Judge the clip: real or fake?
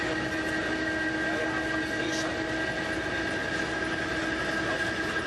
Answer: real